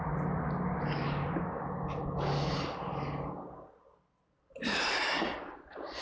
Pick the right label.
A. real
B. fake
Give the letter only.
A